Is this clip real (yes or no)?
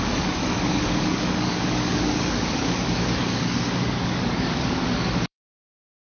no